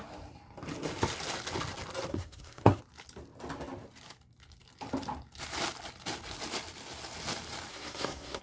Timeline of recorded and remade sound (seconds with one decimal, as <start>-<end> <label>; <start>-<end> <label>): 0.0-2.1 recorded; 2.1-2.8 remade; 2.8-7.7 recorded; 7.7-8.4 remade